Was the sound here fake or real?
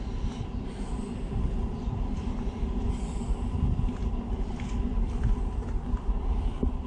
real